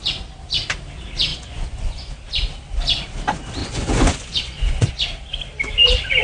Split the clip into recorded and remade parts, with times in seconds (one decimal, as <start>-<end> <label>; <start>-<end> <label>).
0.0-1.3 recorded; 1.3-2.1 remade; 2.1-3.6 recorded; 3.6-4.9 remade; 4.9-6.2 recorded